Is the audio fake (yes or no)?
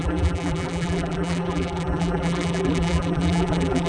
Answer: yes